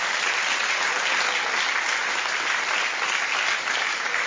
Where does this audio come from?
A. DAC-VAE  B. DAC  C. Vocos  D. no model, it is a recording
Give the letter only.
D